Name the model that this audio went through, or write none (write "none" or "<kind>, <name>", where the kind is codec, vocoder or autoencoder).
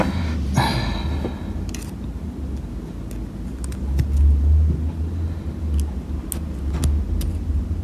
none